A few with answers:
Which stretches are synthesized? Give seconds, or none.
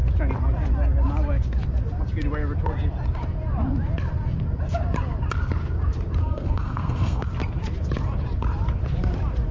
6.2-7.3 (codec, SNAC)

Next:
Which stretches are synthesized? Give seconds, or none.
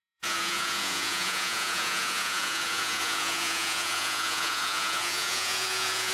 0.0-6.1 (vocoder, Vocos)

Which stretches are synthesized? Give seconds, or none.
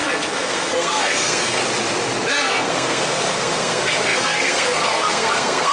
0.0-1.6 (codec, SNAC); 2.3-5.7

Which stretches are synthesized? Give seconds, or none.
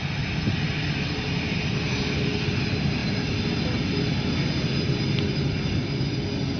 none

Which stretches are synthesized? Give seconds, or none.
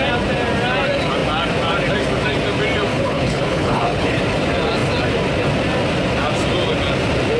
2.9-4.2 (codec, HILCodec)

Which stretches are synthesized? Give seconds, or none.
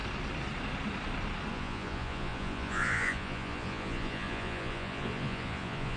1.5-6.0 (vocoder, Vocos)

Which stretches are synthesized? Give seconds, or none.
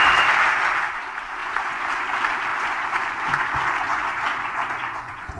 1.4-2.0 (vocoder, Vocos); 2.5-5.4